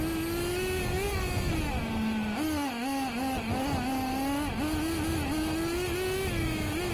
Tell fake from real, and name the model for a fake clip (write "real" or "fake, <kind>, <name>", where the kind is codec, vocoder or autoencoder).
real